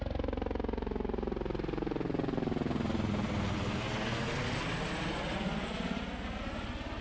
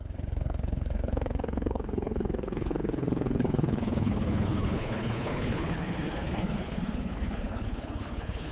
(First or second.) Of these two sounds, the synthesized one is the second